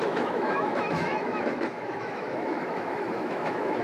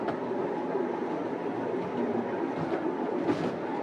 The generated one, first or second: first